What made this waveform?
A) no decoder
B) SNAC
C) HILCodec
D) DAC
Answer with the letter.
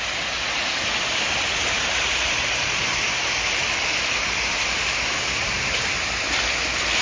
A